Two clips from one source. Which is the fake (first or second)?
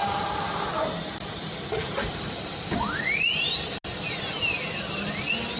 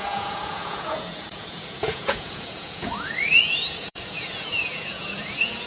second